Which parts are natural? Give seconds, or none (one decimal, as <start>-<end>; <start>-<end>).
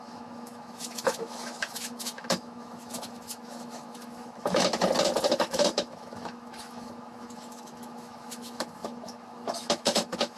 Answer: 4.7-5.3